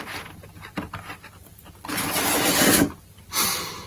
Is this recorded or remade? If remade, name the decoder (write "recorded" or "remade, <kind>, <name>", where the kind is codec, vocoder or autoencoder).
recorded